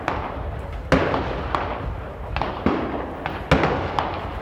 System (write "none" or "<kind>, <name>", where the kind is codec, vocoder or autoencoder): none